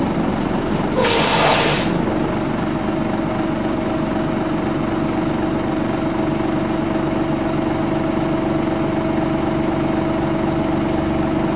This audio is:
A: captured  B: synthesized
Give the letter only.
A